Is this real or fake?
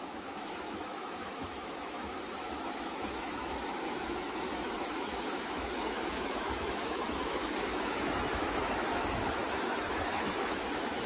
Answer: fake